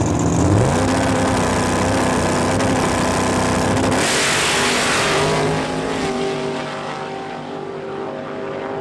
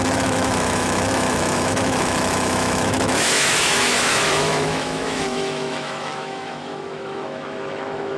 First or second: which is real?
first